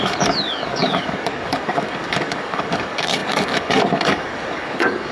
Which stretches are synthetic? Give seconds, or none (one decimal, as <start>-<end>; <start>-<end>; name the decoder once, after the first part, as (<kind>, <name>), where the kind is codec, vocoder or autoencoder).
0.0-5.1 (codec, DAC)